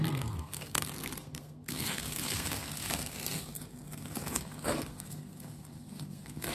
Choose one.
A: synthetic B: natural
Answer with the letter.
A